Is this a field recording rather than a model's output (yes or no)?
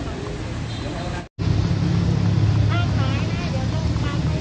yes